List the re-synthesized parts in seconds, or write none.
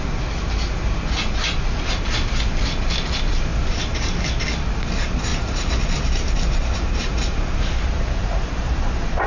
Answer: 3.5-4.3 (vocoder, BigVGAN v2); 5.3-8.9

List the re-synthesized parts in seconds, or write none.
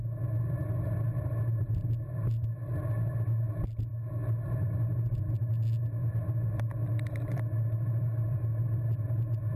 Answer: none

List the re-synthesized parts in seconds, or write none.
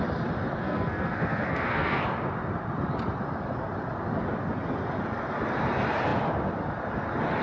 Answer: 0.6-2.0 (codec, SNAC)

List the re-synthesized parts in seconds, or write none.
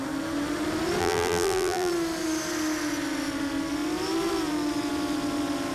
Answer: 1.0-1.9 (vocoder, BigVGAN v2)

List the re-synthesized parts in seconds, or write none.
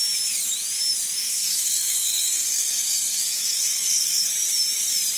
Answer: 1.2-4.3 (codec, SNAC)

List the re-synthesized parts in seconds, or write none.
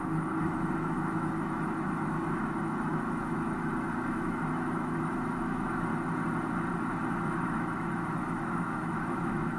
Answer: 0.0-5.9 (autoencoder, DAC-VAE); 6.9-9.6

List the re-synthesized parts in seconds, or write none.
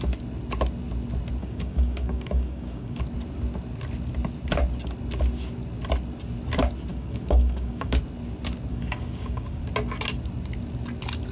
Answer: 1.4-3.0 (codec, DAC); 6.9-8.0; 8.7-9.6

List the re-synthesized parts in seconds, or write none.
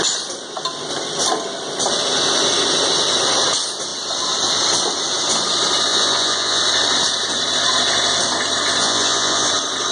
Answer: 5.9-6.6 (vocoder, Vocos); 8.8-9.5